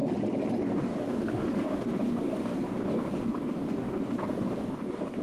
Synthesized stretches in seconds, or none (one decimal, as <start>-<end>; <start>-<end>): 0.6-5.2